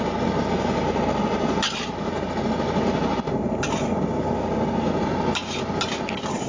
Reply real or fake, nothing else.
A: real